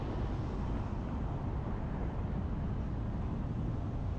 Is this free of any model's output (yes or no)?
yes